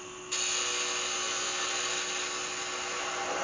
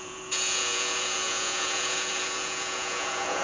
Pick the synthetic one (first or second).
second